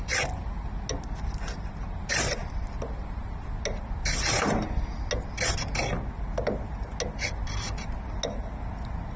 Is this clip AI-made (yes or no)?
no